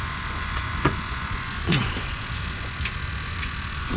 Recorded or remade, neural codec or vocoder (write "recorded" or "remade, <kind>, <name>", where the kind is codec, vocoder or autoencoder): remade, vocoder, Vocos